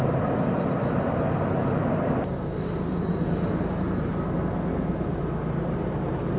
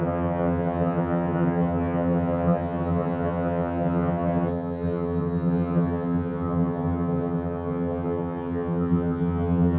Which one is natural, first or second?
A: first